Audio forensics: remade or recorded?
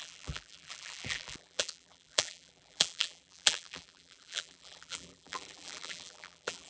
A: remade